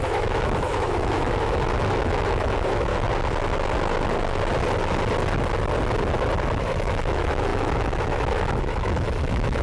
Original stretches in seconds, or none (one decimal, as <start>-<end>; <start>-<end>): 2.9-6.5